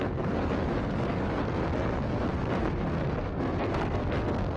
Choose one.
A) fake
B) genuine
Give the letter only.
A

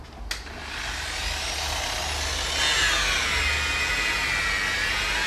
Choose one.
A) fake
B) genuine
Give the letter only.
B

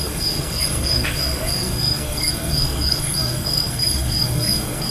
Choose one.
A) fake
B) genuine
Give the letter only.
A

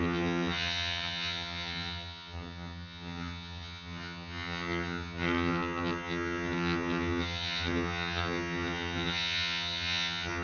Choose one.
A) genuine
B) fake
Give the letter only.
B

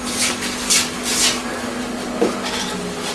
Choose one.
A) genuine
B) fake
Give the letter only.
A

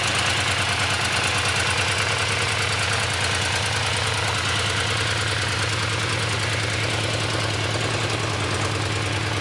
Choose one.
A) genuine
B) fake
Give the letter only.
A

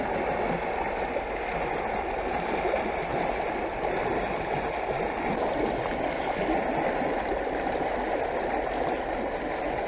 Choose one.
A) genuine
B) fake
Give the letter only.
A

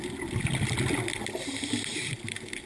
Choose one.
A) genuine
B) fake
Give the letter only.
A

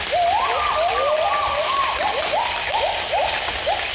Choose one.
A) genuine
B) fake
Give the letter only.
A